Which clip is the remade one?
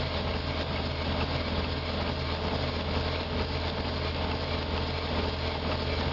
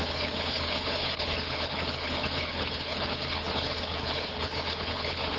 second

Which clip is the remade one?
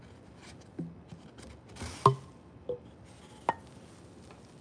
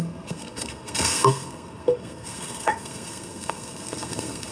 second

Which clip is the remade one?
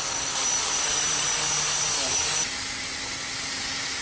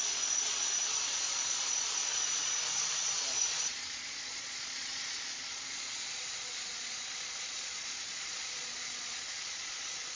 second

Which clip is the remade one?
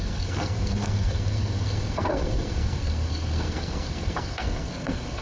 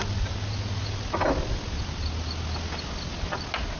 first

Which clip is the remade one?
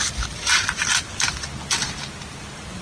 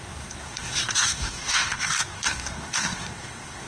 second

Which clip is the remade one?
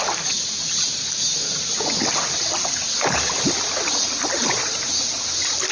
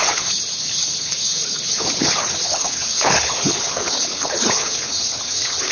second